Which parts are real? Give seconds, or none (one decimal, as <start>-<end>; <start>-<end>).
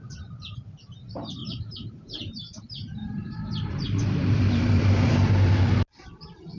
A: 0.0-1.4; 4.8-6.6